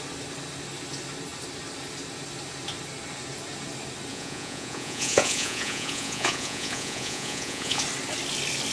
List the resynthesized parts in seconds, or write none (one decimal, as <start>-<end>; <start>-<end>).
4.1-7.8